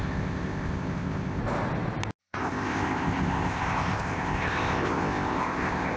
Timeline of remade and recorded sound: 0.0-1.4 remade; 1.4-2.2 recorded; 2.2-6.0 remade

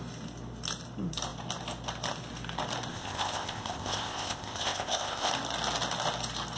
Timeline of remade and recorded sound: 0.0-2.9 recorded; 2.9-5.3 remade; 5.3-6.6 recorded

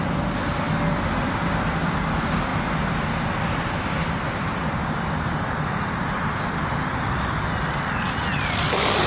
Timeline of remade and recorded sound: 0.0-9.1 recorded

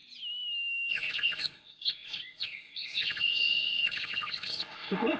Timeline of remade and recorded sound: 0.0-0.9 recorded; 0.9-5.2 remade

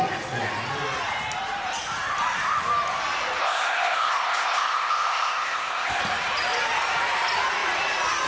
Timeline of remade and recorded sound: 0.0-3.4 recorded; 3.4-6.0 remade; 6.0-8.3 recorded